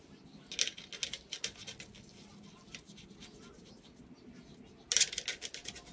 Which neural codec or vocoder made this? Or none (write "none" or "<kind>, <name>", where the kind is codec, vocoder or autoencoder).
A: none